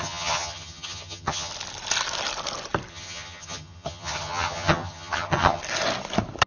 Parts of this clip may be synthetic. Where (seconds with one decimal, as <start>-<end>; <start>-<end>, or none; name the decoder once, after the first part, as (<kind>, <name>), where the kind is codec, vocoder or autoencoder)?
0.0-1.5 (vocoder, HiFi-GAN); 2.9-5.6